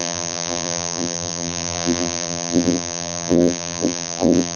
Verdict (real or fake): fake